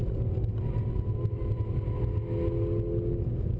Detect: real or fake real